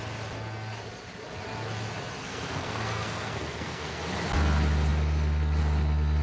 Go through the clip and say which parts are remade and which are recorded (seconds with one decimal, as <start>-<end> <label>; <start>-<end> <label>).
0.0-2.2 recorded; 2.2-4.0 remade; 4.0-6.2 recorded